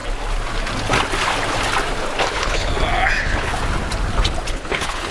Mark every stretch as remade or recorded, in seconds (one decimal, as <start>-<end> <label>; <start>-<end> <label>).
0.0-2.3 recorded; 2.3-2.7 remade; 2.7-3.2 recorded; 3.2-3.6 remade; 3.6-4.5 recorded; 4.5-5.1 remade